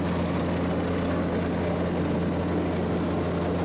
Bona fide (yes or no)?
yes